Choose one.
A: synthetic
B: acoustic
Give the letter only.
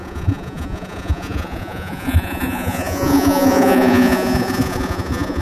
A